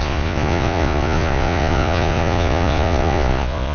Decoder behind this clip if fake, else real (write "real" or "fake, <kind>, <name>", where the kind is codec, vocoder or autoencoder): fake, vocoder, Vocos